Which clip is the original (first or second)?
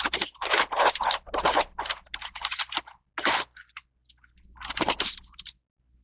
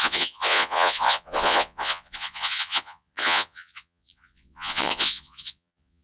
first